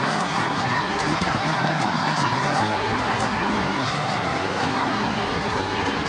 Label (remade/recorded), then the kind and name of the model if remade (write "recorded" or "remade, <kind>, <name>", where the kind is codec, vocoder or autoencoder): remade, codec, SNAC